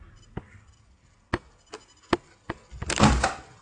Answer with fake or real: real